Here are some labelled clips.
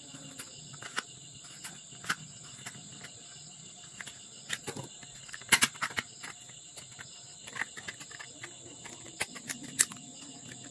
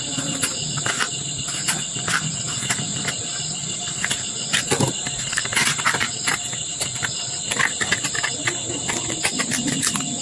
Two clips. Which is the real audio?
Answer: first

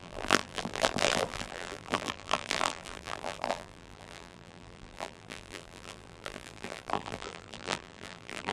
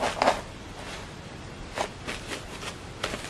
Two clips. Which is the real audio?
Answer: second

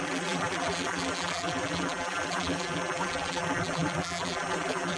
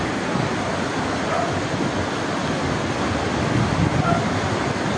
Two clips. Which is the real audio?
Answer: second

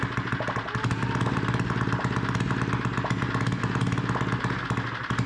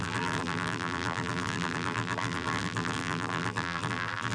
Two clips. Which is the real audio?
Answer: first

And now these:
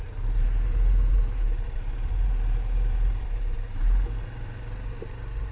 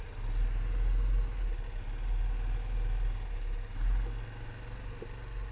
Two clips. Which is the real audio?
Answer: second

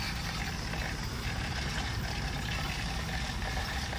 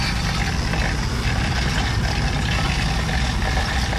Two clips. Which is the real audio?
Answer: second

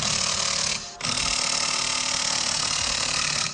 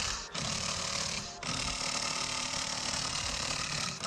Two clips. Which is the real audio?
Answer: first